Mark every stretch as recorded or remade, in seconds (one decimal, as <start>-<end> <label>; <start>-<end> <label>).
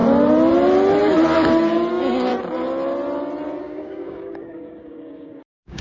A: 0.0-1.9 recorded; 1.9-2.3 remade; 2.3-3.6 recorded; 3.6-5.8 remade